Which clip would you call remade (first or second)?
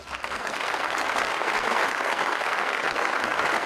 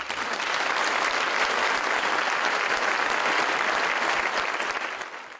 first